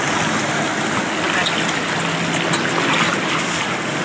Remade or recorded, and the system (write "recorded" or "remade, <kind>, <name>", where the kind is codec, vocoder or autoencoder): recorded